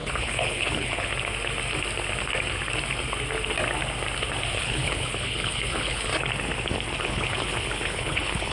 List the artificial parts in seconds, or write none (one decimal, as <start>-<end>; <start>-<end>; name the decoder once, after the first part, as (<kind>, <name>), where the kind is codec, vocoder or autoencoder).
0.0-1.1 (codec, HILCodec); 4.5-6.1; 7.0-8.5